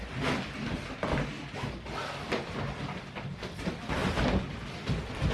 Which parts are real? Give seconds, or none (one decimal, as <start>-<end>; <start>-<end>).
0.0-5.3